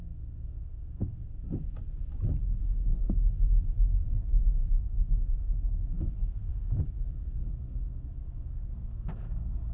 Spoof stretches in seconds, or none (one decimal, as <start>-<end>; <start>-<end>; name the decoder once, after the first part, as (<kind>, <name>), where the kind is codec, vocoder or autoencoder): 0.0-1.2 (codec, SNAC); 2.6-9.7